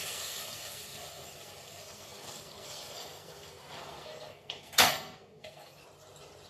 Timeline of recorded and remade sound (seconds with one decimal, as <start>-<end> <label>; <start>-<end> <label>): 0.0-5.8 remade; 5.8-6.5 recorded